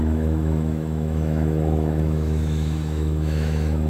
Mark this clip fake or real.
fake